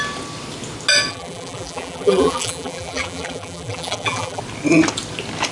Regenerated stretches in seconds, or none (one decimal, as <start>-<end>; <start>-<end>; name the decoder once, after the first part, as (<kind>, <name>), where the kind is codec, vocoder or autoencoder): 1.1-4.4 (vocoder, BigVGAN v2)